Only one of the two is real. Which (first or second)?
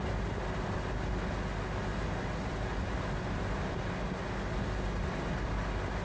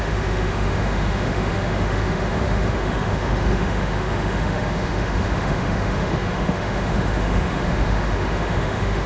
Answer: first